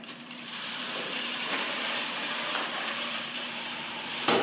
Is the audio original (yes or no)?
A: no